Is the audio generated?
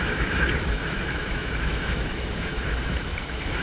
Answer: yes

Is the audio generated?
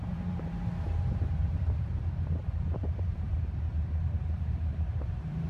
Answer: yes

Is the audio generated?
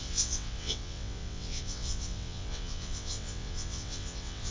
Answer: yes